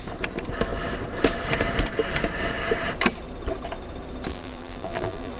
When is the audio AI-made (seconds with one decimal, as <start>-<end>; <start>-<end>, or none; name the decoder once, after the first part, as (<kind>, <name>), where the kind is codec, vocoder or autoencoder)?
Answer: 4.3-5.4 (vocoder, BigVGAN v2)